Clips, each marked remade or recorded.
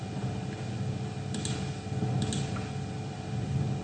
recorded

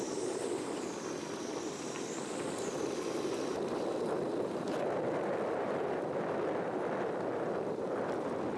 recorded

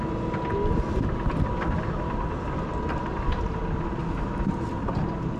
recorded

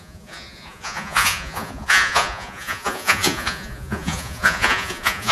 remade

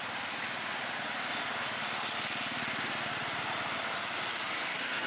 recorded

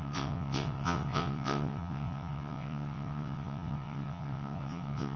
remade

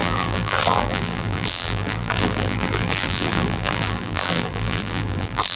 remade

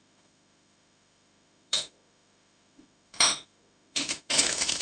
remade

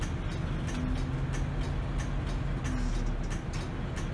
recorded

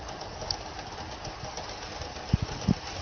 recorded